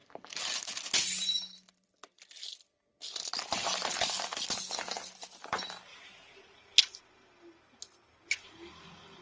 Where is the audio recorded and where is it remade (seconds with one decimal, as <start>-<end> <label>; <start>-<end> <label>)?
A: 0.0-5.9 recorded; 5.9-7.0 remade; 7.0-9.2 recorded